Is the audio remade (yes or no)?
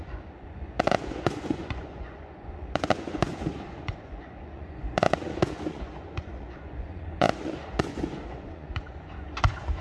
yes